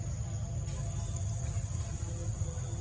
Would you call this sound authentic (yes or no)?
yes